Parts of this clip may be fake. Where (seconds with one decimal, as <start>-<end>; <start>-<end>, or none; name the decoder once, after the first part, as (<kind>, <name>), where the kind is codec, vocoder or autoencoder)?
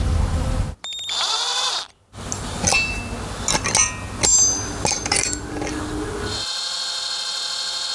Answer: 4.3-5.8 (vocoder, BigVGAN v2)